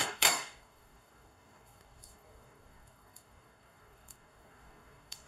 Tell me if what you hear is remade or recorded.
remade